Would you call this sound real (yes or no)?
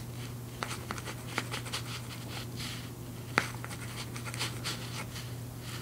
yes